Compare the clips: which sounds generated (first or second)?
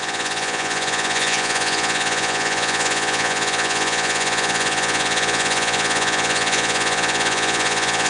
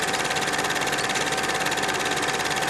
first